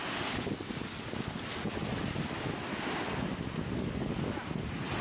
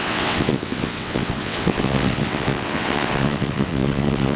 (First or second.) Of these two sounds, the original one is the first